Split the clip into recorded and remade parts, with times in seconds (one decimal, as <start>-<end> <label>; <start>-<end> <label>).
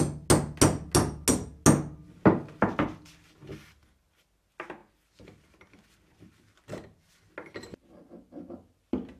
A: 0.0-9.2 recorded